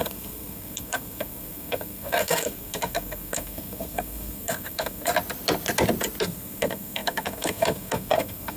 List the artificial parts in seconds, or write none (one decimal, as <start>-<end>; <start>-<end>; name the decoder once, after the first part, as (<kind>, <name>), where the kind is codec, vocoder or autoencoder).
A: 0.0-5.1 (codec, SNAC); 6.2-8.6